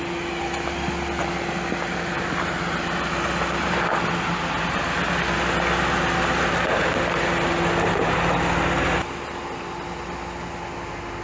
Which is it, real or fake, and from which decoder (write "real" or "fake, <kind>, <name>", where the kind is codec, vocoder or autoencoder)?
real